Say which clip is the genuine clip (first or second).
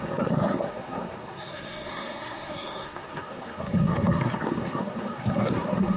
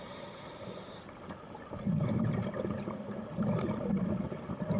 second